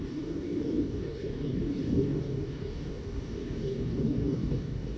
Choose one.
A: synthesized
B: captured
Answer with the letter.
A